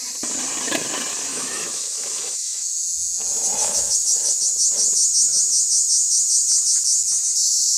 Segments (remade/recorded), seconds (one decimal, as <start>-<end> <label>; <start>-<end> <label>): 0.0-1.3 recorded; 1.3-2.8 remade; 2.8-3.6 recorded; 3.6-4.4 remade; 4.4-7.8 recorded